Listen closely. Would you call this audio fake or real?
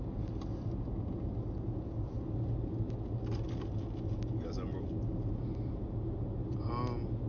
real